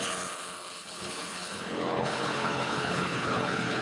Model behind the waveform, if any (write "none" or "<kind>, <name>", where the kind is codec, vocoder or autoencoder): codec, HILCodec